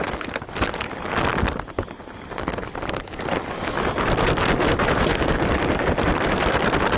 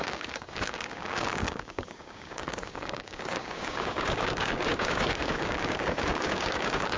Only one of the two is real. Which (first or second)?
first